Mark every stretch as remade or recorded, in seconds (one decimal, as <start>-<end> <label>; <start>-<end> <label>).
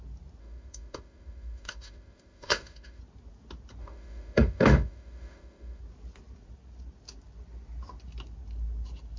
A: 0.0-0.4 recorded; 0.4-3.0 remade; 3.0-3.8 recorded; 3.8-5.8 remade; 5.8-9.2 recorded